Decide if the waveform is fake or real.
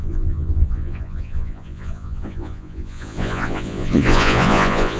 fake